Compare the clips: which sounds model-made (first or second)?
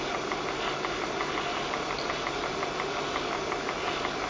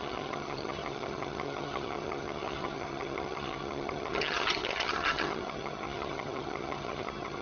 second